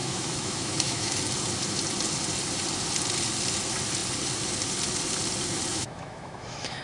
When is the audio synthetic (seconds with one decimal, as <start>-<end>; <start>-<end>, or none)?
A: 0.0-1.1; 5.7-6.8

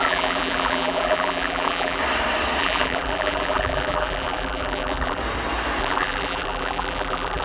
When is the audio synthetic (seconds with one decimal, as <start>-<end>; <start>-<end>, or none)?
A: 0.0-2.0; 2.6-5.2; 5.8-7.4

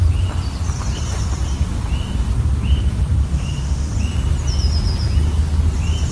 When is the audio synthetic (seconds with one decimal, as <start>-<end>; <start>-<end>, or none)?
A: 3.2-3.9

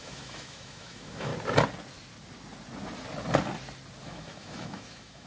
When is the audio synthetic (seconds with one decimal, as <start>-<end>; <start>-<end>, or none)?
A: 0.0-1.3; 4.0-5.3

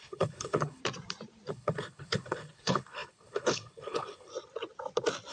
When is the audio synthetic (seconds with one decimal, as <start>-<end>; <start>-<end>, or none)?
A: 0.0-0.8; 1.5-4.3

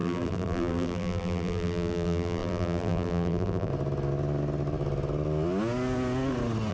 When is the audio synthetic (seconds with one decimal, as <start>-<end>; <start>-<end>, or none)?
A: 0.0-3.7